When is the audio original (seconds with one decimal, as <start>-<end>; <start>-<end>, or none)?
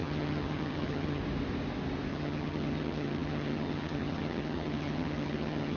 1.2-2.1